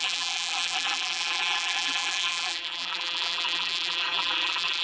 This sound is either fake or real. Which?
fake